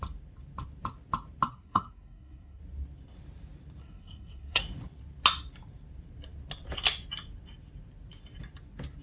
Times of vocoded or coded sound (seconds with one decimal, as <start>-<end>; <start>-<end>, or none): 1.5-2.6; 3.8-4.6